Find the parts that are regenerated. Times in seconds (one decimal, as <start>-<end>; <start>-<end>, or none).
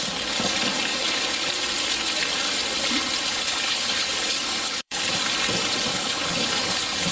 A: 0.9-1.5; 3.3-5.0; 5.9-7.1